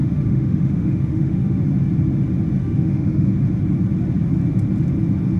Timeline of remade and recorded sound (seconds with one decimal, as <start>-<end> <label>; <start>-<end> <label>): 0.0-1.6 remade; 1.6-2.6 recorded; 2.6-3.3 remade; 3.3-5.4 recorded